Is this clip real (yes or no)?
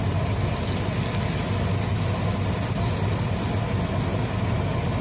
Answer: yes